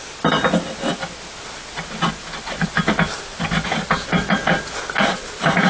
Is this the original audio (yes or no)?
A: yes